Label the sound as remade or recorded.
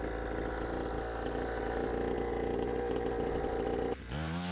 recorded